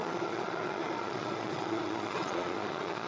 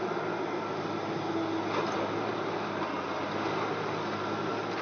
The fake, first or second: first